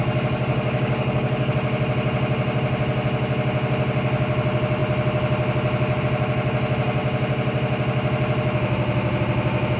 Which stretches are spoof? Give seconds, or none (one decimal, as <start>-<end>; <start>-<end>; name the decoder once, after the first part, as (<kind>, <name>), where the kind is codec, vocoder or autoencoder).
0.0-1.5 (codec, DAC)